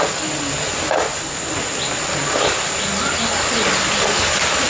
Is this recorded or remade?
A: recorded